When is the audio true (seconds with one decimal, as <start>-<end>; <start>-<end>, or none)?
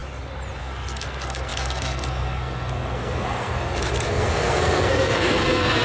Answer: 0.0-0.6